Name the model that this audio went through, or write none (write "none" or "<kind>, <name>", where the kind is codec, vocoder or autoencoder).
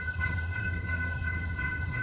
codec, SNAC